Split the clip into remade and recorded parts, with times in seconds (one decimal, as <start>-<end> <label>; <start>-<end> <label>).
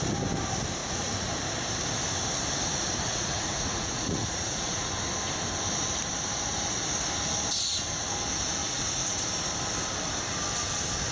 0.0-0.8 recorded; 0.8-1.3 remade; 1.3-3.1 recorded; 3.1-4.9 remade; 4.9-8.6 recorded; 8.6-9.2 remade; 9.2-11.1 recorded